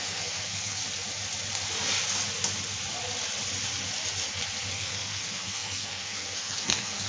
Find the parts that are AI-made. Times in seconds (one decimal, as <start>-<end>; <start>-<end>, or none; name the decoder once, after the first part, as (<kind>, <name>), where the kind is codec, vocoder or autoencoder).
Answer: 0.0-0.8 (codec, SNAC); 4.7-7.1